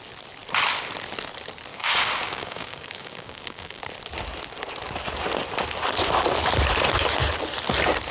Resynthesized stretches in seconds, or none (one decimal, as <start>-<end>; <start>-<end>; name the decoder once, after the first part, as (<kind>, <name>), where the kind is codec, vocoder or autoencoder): 1.7-3.8 (codec, DAC)